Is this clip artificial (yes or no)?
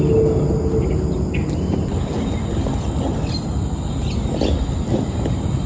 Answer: no